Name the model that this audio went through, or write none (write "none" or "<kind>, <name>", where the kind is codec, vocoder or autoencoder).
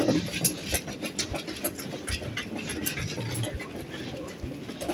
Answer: none